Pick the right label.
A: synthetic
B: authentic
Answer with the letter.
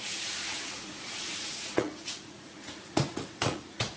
A